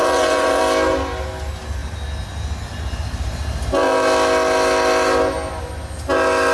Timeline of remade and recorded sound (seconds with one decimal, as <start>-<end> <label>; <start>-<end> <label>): 0.0-0.6 remade; 0.6-6.5 recorded